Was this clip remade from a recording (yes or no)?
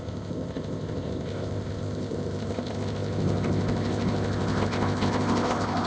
yes